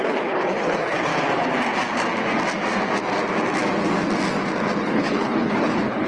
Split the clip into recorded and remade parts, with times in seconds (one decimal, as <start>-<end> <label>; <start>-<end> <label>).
0.0-1.1 remade; 1.1-4.8 recorded; 4.8-6.1 remade